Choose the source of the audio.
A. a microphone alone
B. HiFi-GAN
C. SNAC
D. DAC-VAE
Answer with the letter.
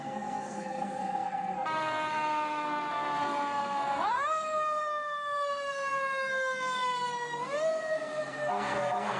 C